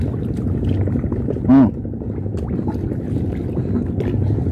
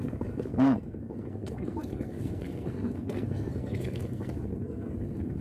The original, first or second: first